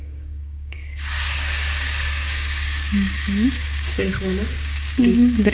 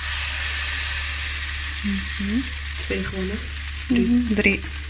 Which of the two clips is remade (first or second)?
first